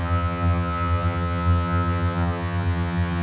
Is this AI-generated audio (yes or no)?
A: yes